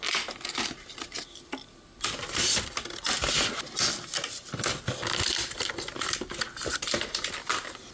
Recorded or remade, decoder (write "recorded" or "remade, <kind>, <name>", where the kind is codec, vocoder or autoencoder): recorded